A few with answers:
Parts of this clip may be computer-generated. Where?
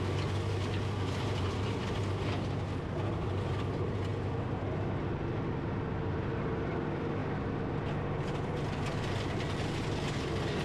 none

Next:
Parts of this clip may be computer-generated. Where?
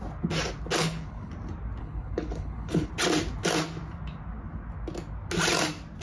0.8-1.3 (codec, HILCodec); 1.8-2.9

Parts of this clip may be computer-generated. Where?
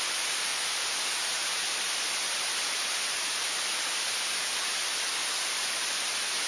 0.5-4.4 (vocoder, BigVGAN v2); 5.2-5.7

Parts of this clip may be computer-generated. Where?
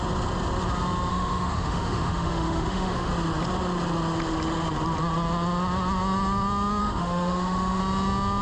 1.1-3.1 (autoencoder, DAC-VAE); 6.8-7.8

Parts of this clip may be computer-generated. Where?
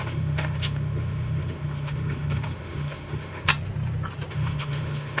0.0-3.5 (autoencoder, DAC-VAE); 4.3-5.2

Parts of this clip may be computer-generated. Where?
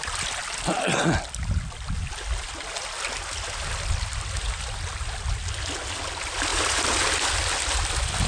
none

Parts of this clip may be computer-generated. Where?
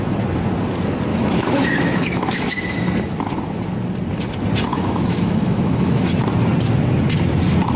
1.1-2.4 (autoencoder, DAC-VAE); 4.7-6.0